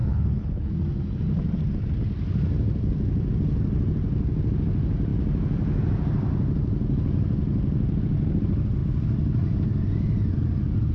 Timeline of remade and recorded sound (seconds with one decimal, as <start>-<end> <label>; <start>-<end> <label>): 0.0-0.7 remade; 0.7-10.9 recorded